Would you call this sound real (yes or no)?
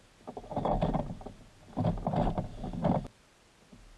yes